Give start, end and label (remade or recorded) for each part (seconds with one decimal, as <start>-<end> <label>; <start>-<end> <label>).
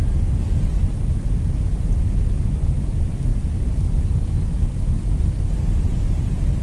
0.0-6.6 recorded